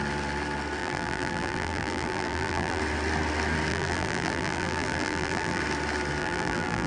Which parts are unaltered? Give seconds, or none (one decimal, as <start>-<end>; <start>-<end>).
0.0-0.8; 2.8-3.7; 5.6-6.2